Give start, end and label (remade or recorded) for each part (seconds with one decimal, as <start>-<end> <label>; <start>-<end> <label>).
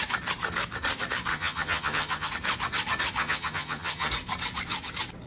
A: 0.0-1.3 recorded; 1.3-2.3 remade; 2.3-3.2 recorded; 3.2-4.1 remade; 4.1-5.3 recorded